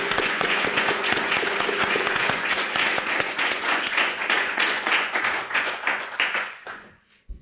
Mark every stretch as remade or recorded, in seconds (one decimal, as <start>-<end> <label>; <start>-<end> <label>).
0.0-7.4 remade